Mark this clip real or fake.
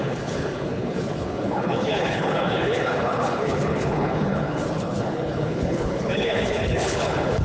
fake